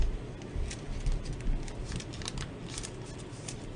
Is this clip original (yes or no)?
yes